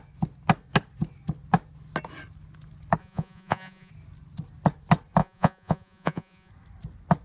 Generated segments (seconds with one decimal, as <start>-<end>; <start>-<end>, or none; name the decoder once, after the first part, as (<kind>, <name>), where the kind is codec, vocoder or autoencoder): 3.0-3.9 (vocoder, Vocos); 5.2-6.5